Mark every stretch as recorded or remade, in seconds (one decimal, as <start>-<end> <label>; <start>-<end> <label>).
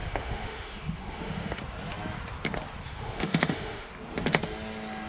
0.0-1.6 remade; 1.6-2.9 recorded; 2.9-3.9 remade; 3.9-5.1 recorded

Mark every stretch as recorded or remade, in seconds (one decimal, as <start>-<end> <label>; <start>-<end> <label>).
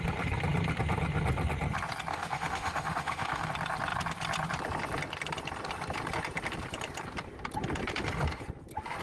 0.0-2.1 recorded; 2.1-3.5 remade; 3.5-9.0 recorded